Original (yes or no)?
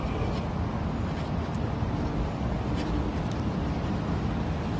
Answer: no